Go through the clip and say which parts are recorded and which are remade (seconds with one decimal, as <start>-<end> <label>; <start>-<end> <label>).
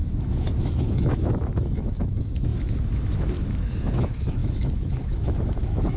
0.0-6.0 remade